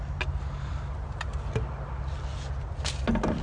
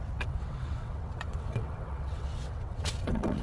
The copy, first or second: second